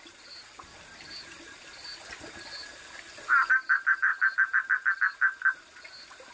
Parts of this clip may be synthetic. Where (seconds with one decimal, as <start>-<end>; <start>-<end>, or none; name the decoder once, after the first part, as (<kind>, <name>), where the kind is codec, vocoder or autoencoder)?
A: none